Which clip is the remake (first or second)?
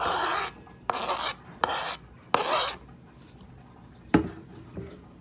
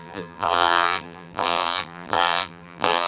second